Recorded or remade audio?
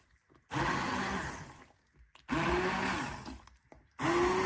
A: recorded